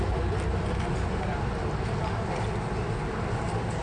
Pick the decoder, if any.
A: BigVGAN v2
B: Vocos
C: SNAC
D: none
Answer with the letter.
D